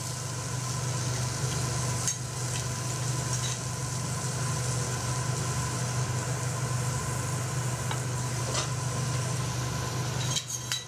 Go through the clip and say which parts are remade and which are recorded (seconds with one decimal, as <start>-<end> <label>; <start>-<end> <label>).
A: 0.0-10.9 recorded